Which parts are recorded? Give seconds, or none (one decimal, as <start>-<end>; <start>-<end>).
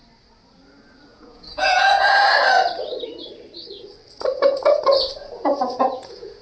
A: 0.0-1.1; 2.3-4.3; 4.8-5.2